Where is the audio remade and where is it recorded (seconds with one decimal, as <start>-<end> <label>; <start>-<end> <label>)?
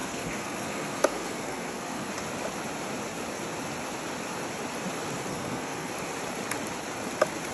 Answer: 0.0-2.1 remade; 2.1-5.3 recorded; 5.3-5.9 remade; 5.9-7.5 recorded